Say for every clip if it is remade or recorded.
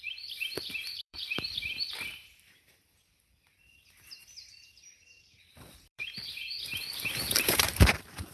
remade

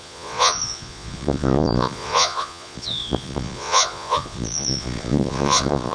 remade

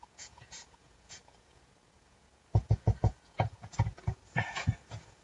remade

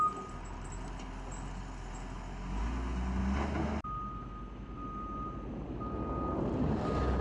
recorded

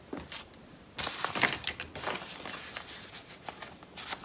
recorded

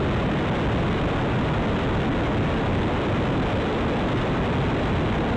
recorded